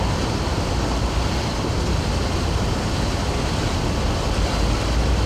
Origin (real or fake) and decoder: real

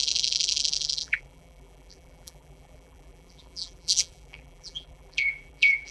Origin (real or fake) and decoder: fake, vocoder, BigVGAN v2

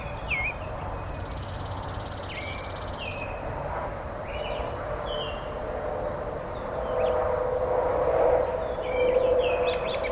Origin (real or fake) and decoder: real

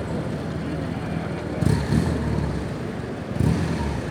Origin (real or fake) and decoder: real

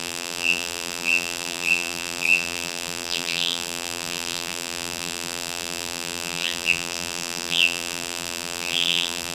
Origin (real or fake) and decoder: fake, vocoder, BigVGAN v2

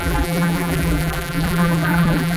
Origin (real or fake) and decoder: fake, vocoder, BigVGAN v2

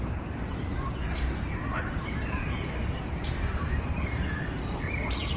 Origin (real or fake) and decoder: fake, vocoder, BigVGAN v2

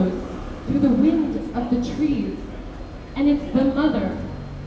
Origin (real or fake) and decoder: real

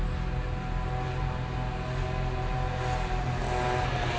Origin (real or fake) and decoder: real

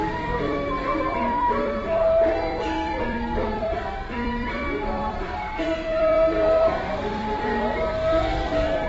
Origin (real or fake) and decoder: fake, vocoder, BigVGAN v2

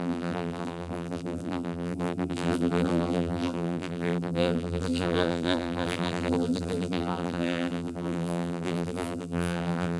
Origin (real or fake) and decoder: fake, vocoder, BigVGAN v2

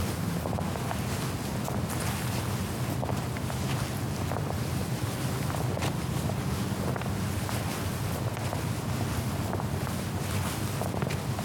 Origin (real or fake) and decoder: real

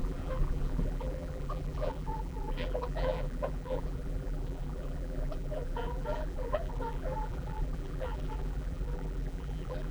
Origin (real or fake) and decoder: fake, vocoder, BigVGAN v2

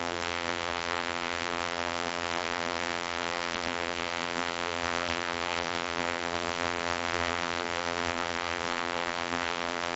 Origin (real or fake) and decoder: fake, vocoder, BigVGAN v2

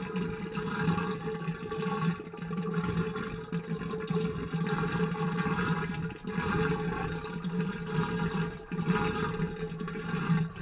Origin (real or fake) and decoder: real